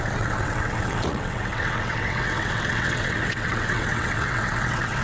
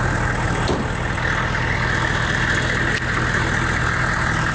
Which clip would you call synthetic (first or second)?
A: first